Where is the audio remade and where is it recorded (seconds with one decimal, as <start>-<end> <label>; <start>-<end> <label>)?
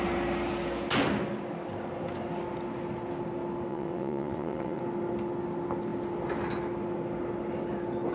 0.0-3.7 recorded; 3.7-4.8 remade; 4.8-8.1 recorded